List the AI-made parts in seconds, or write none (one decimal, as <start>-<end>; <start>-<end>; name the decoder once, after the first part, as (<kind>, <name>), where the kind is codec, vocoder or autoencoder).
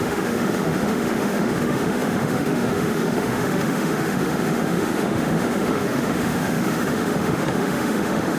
0.0-8.4 (autoencoder, DAC-VAE)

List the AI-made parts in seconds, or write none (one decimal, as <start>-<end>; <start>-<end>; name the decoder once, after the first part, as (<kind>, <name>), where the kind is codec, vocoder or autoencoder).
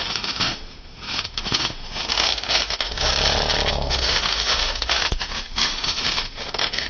0.0-3.1 (autoencoder, DAC-VAE); 3.7-6.9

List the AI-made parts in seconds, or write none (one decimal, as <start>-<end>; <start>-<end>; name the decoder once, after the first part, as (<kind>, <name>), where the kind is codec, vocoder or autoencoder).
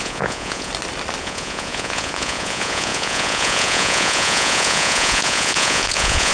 0.0-0.7 (vocoder, Vocos); 1.2-6.3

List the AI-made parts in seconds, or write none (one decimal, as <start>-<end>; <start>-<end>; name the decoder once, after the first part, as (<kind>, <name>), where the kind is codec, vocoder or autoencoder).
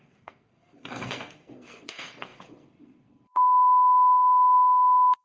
0.0-5.2 (codec, SNAC)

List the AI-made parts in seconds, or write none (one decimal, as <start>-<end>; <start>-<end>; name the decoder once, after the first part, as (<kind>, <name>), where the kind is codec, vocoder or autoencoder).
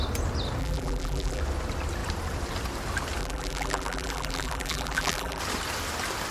0.6-1.4 (vocoder, BigVGAN v2); 3.2-5.4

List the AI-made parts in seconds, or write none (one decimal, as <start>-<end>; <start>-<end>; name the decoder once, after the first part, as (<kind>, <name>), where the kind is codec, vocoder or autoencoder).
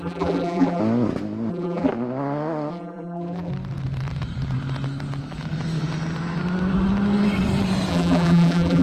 0.0-0.8 (vocoder, BigVGAN v2); 1.5-1.9; 2.7-3.5; 7.9-8.8